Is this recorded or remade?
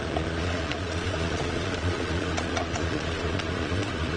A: remade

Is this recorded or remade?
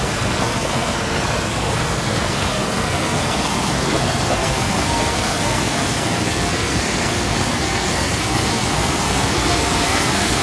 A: remade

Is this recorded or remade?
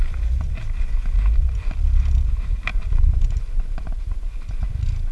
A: recorded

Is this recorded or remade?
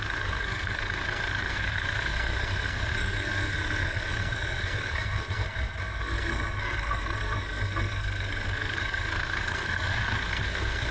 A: remade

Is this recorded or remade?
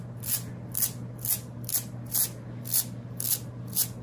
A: recorded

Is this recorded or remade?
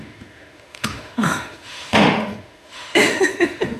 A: remade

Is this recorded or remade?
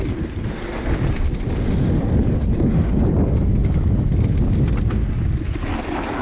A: recorded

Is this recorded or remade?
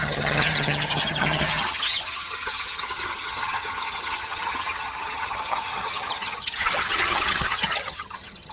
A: remade